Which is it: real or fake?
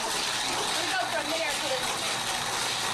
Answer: real